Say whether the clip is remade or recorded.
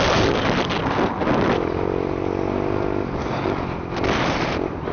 recorded